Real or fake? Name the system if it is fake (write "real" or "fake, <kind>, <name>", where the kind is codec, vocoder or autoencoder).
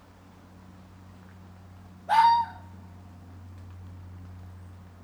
real